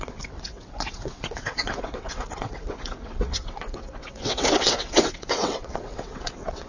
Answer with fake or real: fake